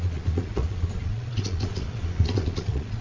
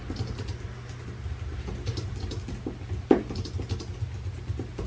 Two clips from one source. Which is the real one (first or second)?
second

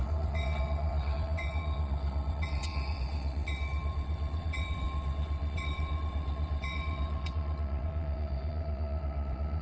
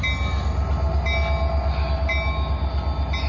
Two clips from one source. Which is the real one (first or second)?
second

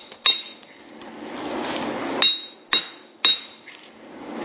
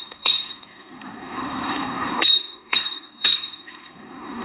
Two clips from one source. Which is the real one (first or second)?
first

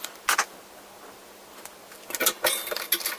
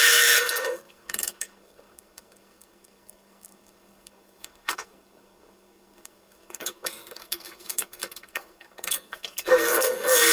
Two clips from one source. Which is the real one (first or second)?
first